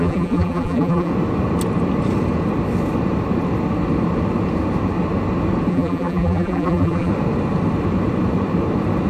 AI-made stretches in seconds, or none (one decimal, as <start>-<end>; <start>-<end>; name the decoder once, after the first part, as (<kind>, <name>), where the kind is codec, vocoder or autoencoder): 0.0-1.1 (vocoder, BigVGAN v2); 5.7-7.1